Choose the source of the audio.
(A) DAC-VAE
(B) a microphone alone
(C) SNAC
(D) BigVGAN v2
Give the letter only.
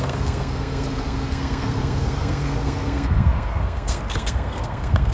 C